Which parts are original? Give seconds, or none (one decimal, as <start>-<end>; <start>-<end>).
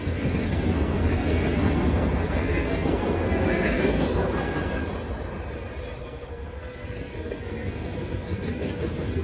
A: 4.8-6.0